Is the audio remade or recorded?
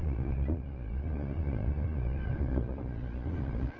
remade